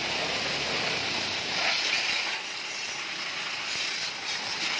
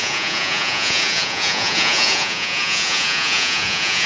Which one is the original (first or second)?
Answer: first